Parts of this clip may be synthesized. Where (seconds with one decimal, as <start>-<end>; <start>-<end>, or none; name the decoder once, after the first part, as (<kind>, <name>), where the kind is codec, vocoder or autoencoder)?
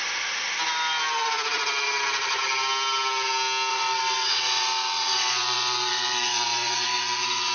3.7-7.5 (vocoder, WaveNeXt)